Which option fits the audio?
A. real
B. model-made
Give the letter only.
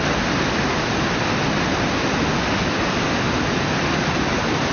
A